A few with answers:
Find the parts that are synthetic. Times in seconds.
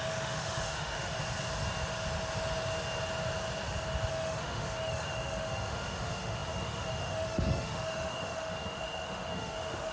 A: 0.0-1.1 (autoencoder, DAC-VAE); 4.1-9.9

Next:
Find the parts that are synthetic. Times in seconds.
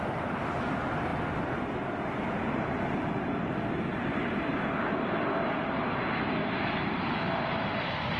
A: none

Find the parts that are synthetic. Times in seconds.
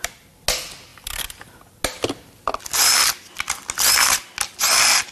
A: none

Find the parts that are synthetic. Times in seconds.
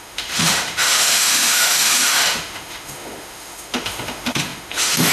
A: 0.0-5.1 (autoencoder, DAC-VAE)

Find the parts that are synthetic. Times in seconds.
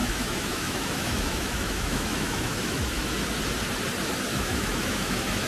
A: 0.0-3.0 (autoencoder, DAC-VAE); 4.3-5.5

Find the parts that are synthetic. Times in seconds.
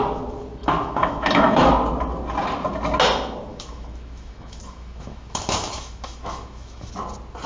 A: 0.6-1.7 (autoencoder, DAC-VAE); 3.5-6.9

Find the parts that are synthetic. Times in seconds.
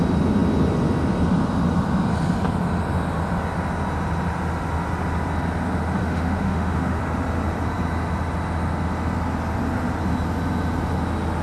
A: 6.0-7.0 (autoencoder, DAC-VAE)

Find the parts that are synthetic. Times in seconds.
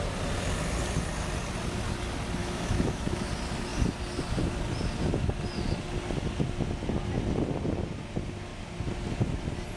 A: 2.4-3.3 (autoencoder, DAC-VAE)